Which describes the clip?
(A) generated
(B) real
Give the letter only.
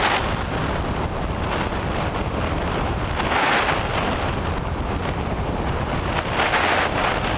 B